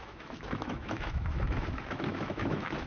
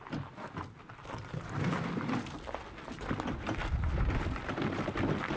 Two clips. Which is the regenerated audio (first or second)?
first